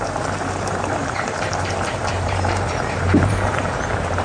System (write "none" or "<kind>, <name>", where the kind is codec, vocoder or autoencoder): vocoder, BigVGAN v2